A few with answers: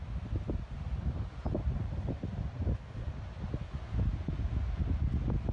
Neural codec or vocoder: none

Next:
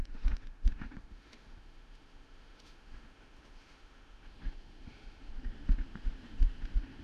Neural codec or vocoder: autoencoder, DAC-VAE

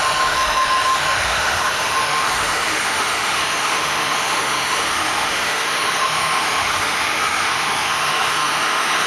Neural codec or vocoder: autoencoder, DAC-VAE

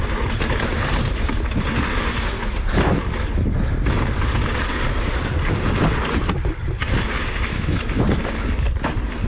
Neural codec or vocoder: none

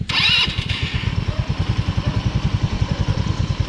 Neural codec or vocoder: none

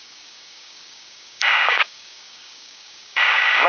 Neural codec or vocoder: codec, DAC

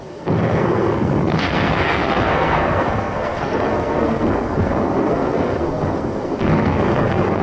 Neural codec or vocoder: codec, SNAC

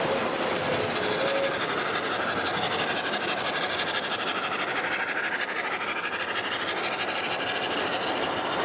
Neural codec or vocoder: none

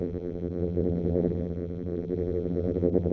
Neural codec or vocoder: vocoder, BigVGAN v2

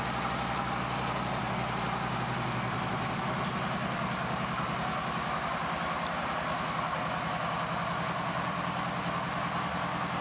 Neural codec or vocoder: none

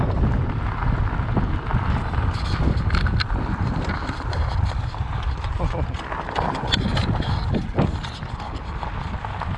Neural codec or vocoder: none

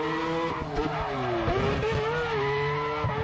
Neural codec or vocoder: none